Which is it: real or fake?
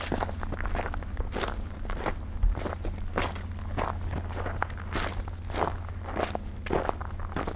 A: real